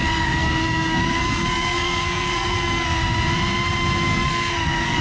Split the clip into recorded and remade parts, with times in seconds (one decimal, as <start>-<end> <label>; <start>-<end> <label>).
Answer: 0.0-3.0 remade; 3.0-4.1 recorded; 4.1-5.0 remade